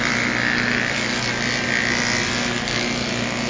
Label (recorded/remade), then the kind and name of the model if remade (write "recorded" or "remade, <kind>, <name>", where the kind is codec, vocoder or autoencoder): recorded